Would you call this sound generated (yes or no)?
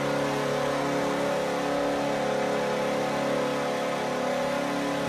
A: no